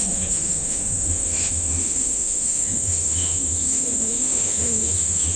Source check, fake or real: fake